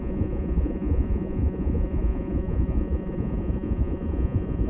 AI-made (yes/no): yes